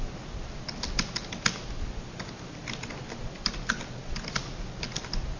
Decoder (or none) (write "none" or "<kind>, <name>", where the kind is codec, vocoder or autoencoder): none